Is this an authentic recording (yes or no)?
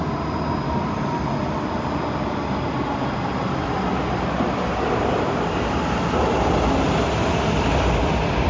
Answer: yes